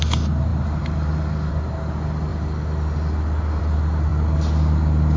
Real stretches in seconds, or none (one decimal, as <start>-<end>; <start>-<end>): 0.0-5.2